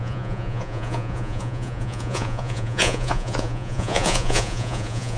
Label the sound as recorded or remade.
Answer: remade